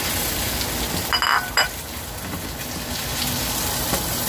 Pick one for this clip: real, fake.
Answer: real